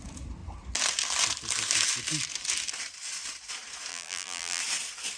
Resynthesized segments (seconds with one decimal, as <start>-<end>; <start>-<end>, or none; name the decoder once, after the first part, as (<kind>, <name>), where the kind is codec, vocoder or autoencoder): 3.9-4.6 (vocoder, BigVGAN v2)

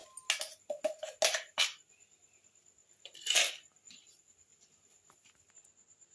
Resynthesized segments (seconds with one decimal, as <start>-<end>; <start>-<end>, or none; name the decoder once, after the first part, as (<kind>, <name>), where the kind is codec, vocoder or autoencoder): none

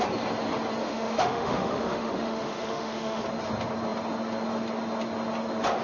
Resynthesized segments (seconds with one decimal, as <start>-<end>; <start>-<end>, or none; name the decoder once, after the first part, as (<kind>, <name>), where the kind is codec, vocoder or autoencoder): 0.8-3.2 (autoencoder, DAC-VAE)

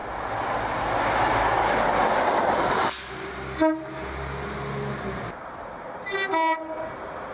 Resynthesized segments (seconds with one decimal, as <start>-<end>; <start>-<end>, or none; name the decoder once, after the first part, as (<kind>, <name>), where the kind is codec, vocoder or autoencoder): none

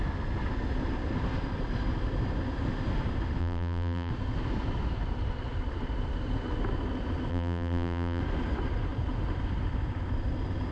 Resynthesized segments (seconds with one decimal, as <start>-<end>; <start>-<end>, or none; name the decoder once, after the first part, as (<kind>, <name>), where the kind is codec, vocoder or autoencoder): 3.4-4.1 (vocoder, BigVGAN v2); 7.3-8.2

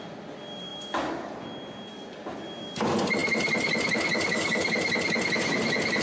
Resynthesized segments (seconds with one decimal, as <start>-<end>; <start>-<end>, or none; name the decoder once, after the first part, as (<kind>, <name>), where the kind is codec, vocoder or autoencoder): none

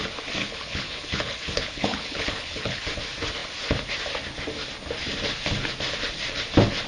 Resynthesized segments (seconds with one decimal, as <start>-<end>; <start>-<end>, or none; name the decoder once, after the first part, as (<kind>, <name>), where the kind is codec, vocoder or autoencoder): 0.4-2.8 (codec, HILCodec)